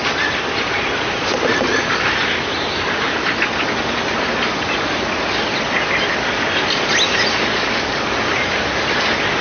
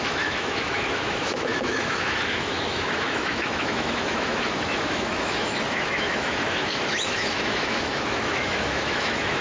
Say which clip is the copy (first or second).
second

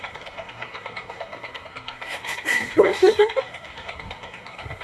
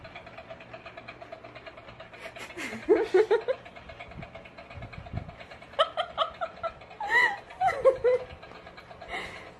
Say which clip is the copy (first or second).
first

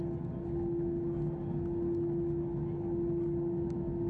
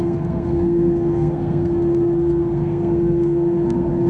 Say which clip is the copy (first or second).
second